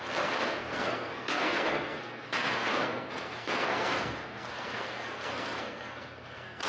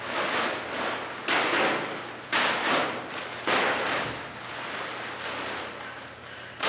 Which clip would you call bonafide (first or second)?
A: second